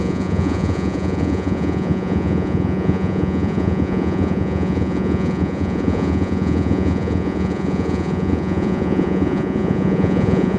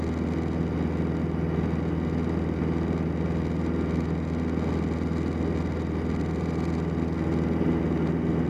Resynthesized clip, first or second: first